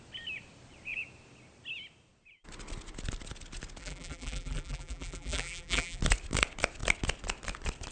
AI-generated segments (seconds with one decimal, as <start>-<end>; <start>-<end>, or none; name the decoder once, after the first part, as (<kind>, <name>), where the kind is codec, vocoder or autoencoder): 3.8-6.0 (vocoder, BigVGAN v2)